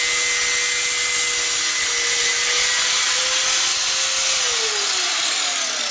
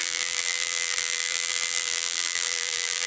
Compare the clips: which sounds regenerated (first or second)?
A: second